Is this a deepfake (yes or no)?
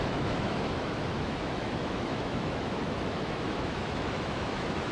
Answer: yes